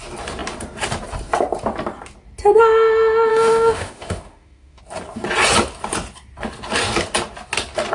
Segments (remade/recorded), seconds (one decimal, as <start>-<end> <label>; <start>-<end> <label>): 0.0-3.3 recorded; 3.3-4.8 remade; 4.8-7.9 recorded